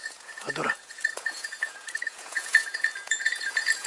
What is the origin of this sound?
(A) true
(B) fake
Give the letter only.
B